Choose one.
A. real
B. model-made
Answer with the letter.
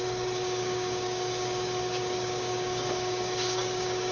B